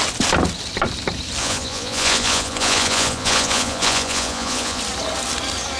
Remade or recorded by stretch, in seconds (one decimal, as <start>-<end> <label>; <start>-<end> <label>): 0.0-1.4 recorded; 1.4-4.8 remade; 4.8-5.8 recorded